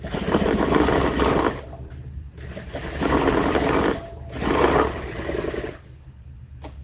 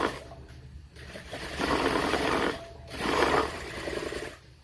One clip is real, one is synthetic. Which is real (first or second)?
first